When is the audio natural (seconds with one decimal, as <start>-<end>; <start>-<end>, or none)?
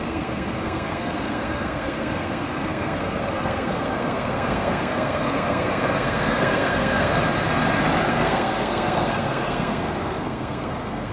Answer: 7.1-8.1